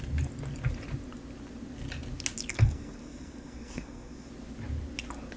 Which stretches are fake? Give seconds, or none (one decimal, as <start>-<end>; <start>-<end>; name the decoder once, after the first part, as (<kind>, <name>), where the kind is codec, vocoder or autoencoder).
2.5-4.3 (codec, SNAC)